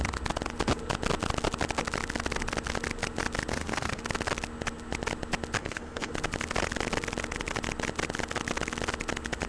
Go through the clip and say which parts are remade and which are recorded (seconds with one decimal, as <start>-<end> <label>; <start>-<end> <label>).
0.0-3.5 recorded; 3.5-4.0 remade; 4.0-5.6 recorded; 5.6-6.1 remade; 6.1-9.5 recorded